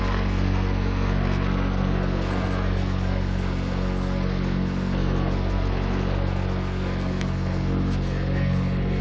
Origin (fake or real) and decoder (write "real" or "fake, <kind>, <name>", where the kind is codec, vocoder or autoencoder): fake, codec, SNAC